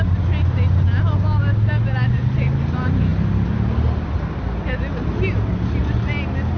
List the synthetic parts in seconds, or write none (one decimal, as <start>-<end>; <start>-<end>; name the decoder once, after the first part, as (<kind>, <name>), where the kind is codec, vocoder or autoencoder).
none